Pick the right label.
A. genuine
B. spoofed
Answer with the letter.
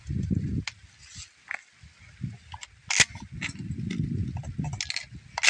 A